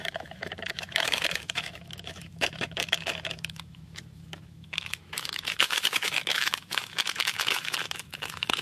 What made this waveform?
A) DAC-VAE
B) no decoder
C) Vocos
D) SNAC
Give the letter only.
A